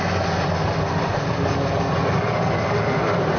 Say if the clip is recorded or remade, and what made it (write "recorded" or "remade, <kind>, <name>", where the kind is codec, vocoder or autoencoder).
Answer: recorded